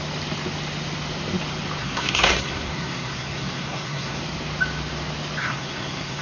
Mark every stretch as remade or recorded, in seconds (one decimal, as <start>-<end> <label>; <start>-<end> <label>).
0.0-1.8 recorded; 1.8-4.2 remade; 4.2-5.4 recorded; 5.4-6.2 remade